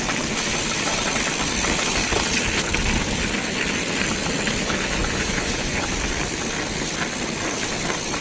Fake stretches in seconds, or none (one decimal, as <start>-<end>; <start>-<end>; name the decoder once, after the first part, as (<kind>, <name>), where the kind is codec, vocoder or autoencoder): 5.0-5.9 (vocoder, Vocos)